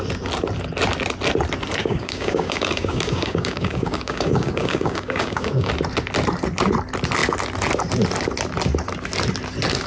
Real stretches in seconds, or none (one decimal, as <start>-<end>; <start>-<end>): 0.0-1.8; 5.7-9.9